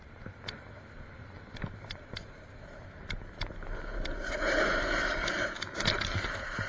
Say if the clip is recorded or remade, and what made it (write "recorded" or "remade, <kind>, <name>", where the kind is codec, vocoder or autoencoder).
recorded